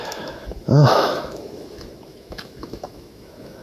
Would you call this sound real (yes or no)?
no